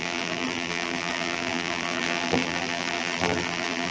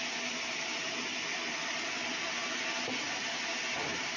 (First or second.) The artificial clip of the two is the first